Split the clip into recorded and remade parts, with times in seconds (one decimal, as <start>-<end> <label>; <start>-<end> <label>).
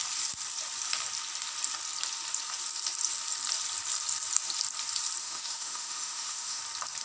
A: 0.0-5.2 recorded; 5.2-6.6 remade; 6.6-7.0 recorded